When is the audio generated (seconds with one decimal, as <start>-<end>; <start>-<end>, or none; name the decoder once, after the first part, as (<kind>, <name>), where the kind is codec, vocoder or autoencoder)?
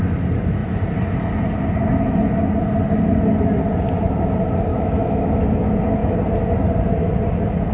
4.7-5.4 (autoencoder, DAC-VAE)